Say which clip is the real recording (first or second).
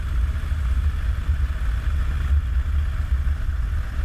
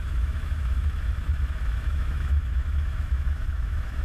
first